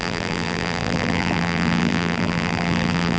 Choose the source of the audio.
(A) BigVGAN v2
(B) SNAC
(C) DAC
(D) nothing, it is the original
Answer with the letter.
A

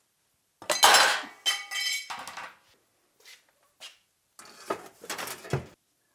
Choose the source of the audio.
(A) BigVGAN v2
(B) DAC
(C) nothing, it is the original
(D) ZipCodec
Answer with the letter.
C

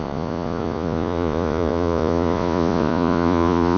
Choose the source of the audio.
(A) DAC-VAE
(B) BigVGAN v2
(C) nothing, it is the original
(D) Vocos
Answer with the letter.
D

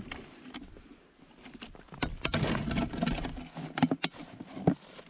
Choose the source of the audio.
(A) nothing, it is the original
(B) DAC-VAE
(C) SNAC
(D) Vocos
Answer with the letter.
A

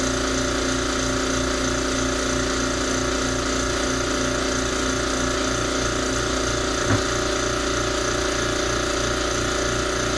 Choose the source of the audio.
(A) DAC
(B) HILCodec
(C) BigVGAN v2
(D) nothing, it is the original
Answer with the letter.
D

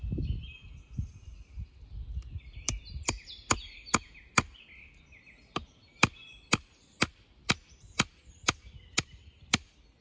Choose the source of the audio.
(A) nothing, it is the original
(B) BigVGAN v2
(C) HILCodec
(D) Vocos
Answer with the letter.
A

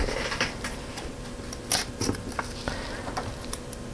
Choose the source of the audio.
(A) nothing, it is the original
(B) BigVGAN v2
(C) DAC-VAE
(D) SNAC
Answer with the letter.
A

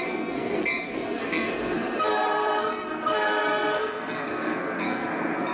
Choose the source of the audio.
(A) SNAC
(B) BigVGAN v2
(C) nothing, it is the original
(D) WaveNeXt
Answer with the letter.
A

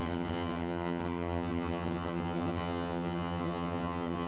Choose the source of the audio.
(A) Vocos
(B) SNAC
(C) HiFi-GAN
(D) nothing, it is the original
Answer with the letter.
C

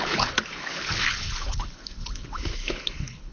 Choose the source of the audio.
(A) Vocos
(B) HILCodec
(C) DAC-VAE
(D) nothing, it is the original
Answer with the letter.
B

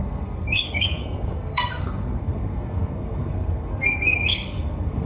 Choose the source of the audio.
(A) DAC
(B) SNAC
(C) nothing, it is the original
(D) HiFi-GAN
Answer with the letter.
B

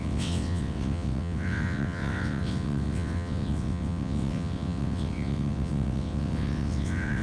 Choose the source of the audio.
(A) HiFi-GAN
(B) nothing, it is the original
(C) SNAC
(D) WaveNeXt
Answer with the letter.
D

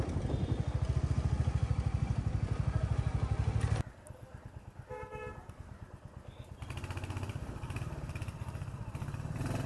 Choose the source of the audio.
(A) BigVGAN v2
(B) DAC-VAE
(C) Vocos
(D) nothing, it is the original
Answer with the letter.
D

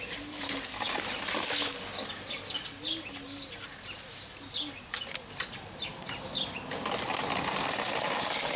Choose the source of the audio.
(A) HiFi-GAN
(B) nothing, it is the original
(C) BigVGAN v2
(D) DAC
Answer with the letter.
B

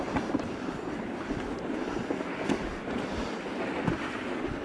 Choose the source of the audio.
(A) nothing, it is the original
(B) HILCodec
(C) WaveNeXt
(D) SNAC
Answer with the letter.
A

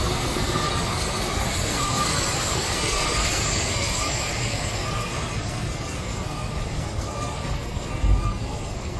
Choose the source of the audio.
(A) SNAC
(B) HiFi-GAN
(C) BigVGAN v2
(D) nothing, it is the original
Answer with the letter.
A